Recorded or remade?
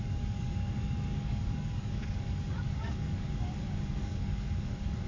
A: remade